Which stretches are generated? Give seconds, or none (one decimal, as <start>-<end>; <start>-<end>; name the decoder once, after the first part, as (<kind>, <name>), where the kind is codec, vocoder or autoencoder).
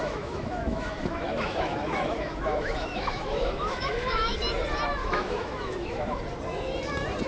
0.0-4.4 (autoencoder, DAC-VAE); 5.0-6.2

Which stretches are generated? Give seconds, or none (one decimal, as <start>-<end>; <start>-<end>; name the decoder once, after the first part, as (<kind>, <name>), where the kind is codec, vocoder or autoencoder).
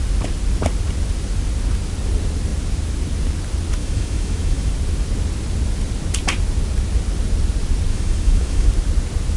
3.8-4.7 (autoencoder, DAC-VAE); 7.9-8.7